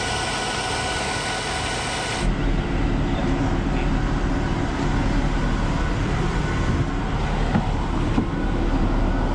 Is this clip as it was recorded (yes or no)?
yes